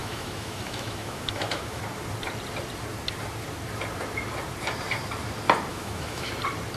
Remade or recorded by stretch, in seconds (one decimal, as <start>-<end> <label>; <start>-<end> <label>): 0.0-1.8 remade; 1.8-5.7 recorded; 5.7-6.3 remade; 6.3-6.8 recorded